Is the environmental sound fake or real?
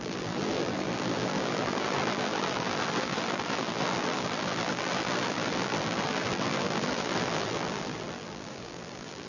fake